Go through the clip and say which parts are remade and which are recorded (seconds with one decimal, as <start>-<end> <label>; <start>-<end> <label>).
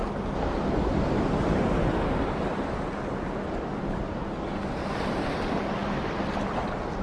0.0-7.0 recorded